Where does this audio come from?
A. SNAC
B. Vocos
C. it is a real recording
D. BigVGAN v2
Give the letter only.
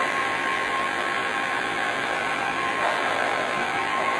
D